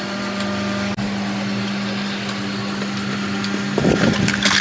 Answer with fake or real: real